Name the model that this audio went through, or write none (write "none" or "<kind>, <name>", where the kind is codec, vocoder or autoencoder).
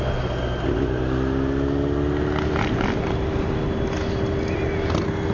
none